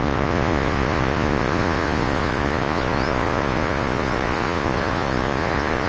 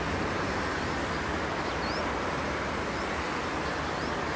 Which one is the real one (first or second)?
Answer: second